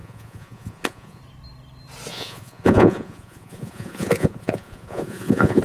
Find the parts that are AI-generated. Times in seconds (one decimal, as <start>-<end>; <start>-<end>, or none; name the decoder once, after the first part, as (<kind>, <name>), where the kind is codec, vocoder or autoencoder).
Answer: 0.0-1.2 (vocoder, Vocos); 2.1-5.6